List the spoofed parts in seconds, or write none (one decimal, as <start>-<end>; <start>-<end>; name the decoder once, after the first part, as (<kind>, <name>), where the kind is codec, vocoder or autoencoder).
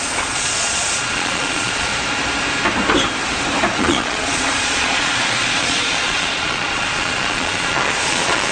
0.0-1.9 (vocoder, Vocos); 3.8-8.5